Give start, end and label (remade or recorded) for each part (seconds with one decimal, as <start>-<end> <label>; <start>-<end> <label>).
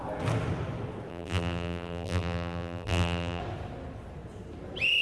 0.0-1.1 recorded; 1.1-3.4 remade; 3.4-5.0 recorded